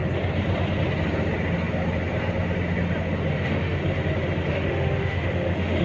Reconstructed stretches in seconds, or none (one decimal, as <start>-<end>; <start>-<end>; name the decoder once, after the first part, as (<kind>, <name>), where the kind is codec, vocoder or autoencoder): 3.3-3.8 (autoencoder, DAC-VAE); 4.5-5.8